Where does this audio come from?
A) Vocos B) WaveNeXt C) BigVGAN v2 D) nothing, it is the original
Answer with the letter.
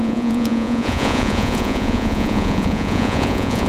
A